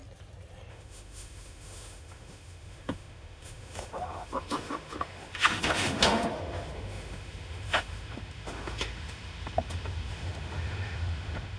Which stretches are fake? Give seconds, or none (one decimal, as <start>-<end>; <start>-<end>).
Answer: 0.7-11.6